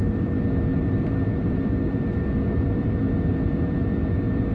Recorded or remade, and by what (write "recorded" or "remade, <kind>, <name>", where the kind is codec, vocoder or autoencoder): remade, vocoder, BigVGAN v2